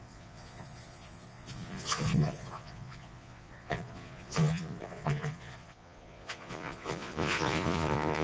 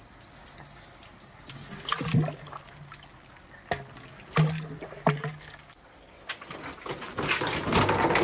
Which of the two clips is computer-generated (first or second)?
first